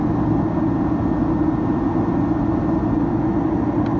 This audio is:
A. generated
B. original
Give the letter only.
B